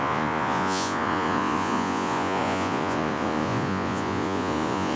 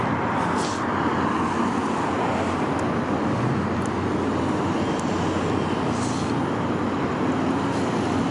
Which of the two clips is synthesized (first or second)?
first